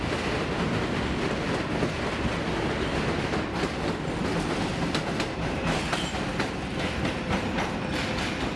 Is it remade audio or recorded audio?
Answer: recorded